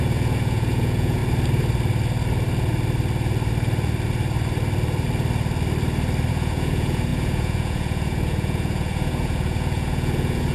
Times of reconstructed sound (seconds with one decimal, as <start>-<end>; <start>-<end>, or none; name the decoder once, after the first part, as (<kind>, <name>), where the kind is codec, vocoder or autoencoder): 0.0-1.2 (vocoder, Vocos); 6.3-10.5